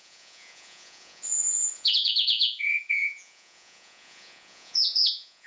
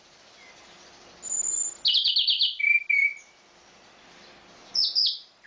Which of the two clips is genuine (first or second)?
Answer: second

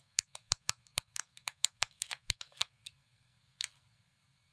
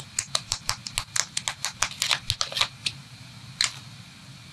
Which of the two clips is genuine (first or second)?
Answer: second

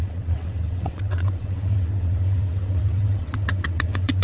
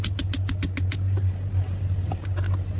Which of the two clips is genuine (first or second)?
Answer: second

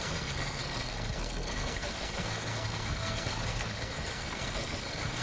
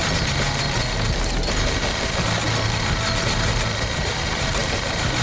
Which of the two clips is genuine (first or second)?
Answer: second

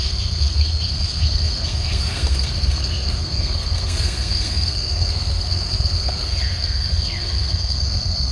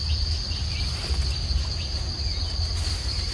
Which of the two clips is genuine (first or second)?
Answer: second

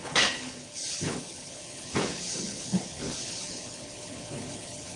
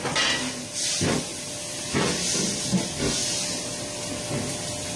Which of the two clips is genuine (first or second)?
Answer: second